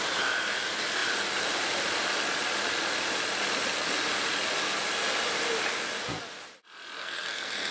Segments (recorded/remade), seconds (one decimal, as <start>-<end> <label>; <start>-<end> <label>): 0.0-7.0 recorded; 7.0-7.7 remade

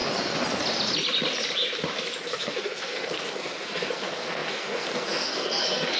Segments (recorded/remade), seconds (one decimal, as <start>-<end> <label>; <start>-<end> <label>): 0.0-2.2 recorded; 2.2-6.0 remade

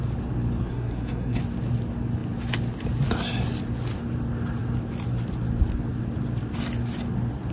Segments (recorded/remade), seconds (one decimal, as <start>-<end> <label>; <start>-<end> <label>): 0.0-0.6 recorded; 0.6-1.4 remade; 1.4-7.5 recorded